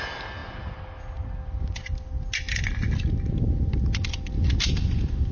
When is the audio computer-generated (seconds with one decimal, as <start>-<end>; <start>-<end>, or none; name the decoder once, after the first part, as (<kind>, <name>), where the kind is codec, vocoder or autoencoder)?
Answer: none